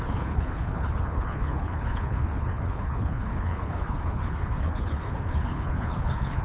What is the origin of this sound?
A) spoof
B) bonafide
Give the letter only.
A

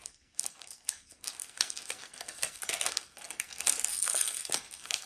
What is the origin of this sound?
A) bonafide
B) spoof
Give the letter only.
B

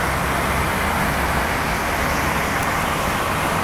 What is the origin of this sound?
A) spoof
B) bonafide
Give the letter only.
B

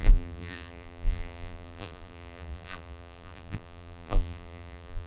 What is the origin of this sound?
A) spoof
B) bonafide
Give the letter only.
A